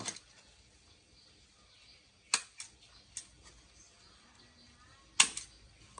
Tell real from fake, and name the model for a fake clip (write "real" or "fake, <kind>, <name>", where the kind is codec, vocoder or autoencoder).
real